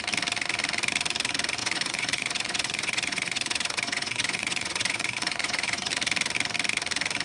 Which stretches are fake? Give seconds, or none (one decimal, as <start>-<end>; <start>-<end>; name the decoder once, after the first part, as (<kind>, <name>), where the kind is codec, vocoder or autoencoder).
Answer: 1.6-5.9 (vocoder, Vocos)